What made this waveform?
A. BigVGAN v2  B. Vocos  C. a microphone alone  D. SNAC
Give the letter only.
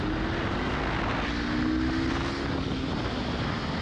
C